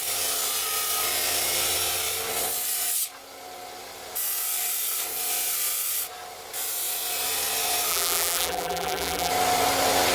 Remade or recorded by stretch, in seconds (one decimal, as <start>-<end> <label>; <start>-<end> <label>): 0.0-7.9 recorded; 7.9-9.3 remade; 9.3-10.1 recorded

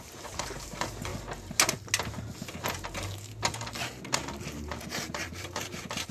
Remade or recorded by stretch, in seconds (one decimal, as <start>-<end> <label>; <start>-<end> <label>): 0.0-1.1 remade; 1.1-4.8 recorded; 4.8-6.1 remade

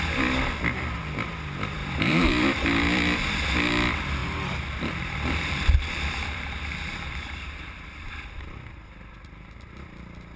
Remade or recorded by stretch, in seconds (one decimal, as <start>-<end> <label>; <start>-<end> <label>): 0.0-1.8 recorded; 1.8-2.7 remade; 2.7-4.2 recorded; 4.2-7.7 remade; 7.7-10.4 recorded

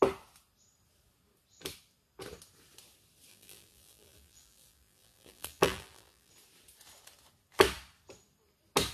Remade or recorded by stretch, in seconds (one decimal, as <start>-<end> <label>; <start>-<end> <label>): 0.0-3.3 recorded; 3.3-6.3 remade; 6.3-8.9 recorded

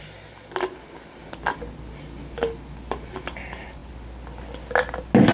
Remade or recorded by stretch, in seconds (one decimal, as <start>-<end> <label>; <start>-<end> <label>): 0.0-5.3 recorded

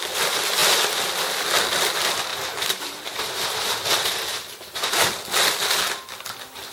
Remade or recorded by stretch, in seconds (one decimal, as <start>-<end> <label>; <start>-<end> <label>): 0.0-2.3 recorded; 2.3-5.0 remade; 5.0-6.7 recorded

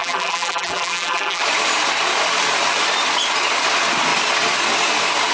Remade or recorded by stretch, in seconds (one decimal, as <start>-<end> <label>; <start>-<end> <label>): 0.0-1.4 remade; 1.4-5.3 recorded

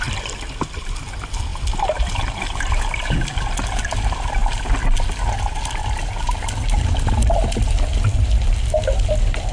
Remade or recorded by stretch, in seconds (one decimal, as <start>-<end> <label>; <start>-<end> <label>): 0.0-9.5 recorded